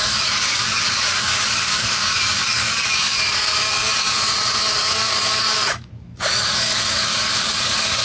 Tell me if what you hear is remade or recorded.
remade